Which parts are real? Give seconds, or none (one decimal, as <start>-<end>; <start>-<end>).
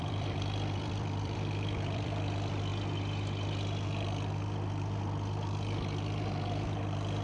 2.7-7.2